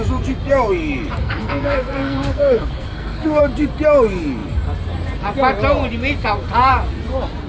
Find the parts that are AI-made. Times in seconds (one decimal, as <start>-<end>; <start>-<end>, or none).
1.2-3.4